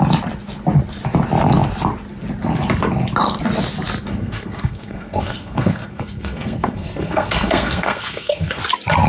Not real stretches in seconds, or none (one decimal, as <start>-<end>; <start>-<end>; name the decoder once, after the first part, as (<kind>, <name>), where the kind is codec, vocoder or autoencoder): 4.1-8.6 (codec, SNAC)